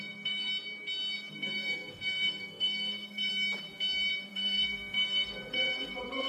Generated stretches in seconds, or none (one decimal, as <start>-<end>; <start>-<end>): 0.0-0.5; 1.3-3.3; 4.3-6.3